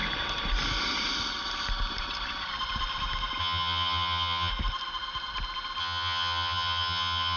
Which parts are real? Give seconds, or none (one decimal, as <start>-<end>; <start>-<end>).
0.0-3.4; 4.5-5.8